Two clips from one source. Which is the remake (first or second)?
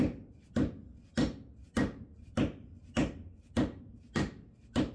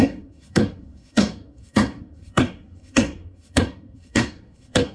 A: second